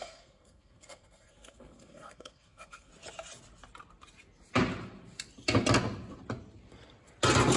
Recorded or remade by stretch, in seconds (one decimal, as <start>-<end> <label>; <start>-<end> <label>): 0.0-2.9 remade; 2.9-7.6 recorded